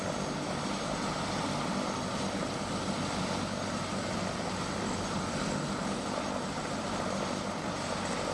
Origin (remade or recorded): recorded